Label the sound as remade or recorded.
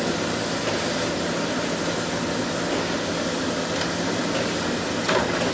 recorded